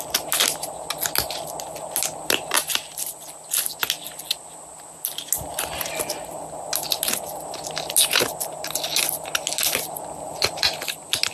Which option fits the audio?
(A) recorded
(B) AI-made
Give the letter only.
A